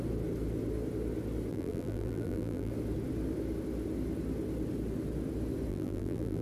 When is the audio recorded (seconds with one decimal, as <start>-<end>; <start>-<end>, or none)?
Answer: 0.0-1.5; 2.7-5.7